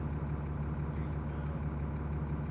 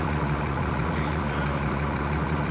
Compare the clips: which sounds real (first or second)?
first